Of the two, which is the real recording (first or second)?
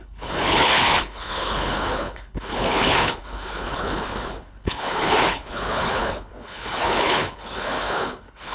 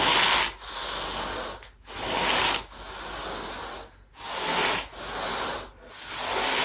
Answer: second